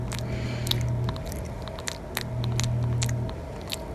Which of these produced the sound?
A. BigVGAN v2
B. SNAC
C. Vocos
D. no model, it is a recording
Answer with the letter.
D